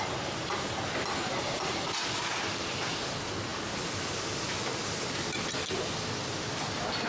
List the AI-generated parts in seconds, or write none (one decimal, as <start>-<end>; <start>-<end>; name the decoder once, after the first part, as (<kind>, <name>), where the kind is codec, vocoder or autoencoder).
none